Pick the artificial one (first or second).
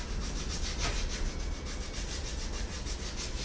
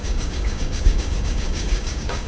second